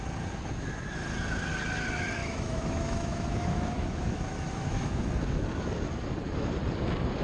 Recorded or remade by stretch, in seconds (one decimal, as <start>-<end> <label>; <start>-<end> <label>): 0.0-2.2 recorded; 2.2-5.0 remade; 5.0-7.2 recorded